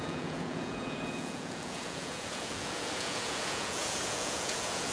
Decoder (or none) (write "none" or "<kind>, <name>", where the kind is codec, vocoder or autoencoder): vocoder, Vocos